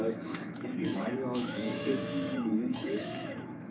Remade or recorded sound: remade